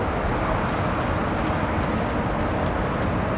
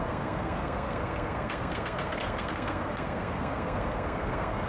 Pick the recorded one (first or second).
first